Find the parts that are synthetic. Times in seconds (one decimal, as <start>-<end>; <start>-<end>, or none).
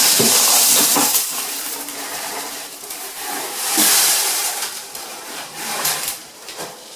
0.0-7.0